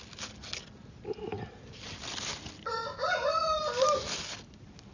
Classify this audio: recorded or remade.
recorded